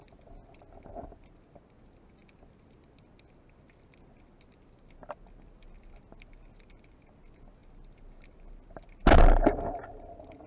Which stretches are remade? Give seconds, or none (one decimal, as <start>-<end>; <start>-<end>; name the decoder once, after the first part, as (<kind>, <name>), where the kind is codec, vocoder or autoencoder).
none